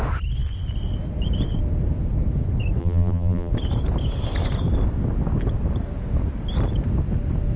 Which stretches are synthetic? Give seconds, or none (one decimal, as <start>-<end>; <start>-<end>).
2.8-3.5